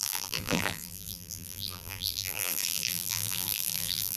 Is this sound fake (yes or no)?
yes